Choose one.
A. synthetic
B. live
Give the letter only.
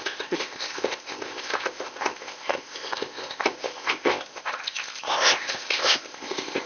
A